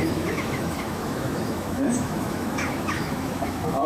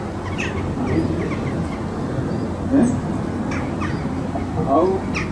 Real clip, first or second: second